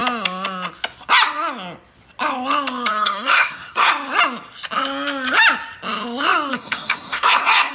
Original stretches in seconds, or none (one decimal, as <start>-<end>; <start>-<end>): 0.0-2.9; 3.9-6.5